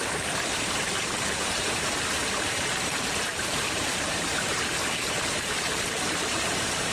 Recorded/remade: remade